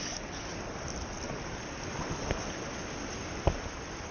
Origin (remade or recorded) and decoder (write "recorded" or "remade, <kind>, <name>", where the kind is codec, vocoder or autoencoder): recorded